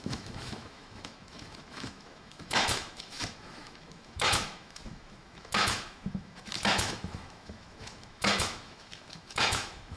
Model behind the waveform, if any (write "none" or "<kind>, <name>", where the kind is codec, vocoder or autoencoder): autoencoder, DAC-VAE